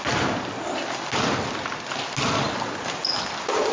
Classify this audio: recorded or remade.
recorded